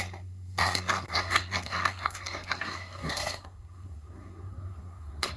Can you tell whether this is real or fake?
fake